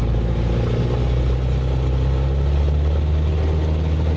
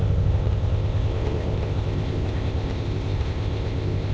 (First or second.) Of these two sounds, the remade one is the second